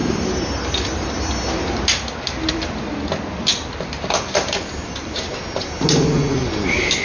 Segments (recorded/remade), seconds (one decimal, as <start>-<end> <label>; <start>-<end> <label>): 0.0-3.5 recorded; 3.5-4.5 remade; 4.5-7.0 recorded